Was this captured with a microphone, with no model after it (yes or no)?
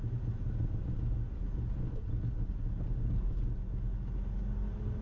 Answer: yes